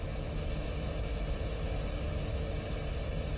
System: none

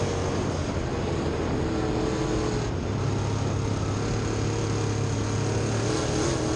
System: none